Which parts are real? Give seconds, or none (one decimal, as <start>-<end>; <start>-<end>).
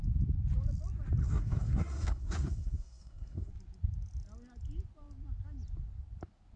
0.0-1.2; 3.5-6.6